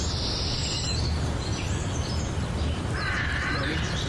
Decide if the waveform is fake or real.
real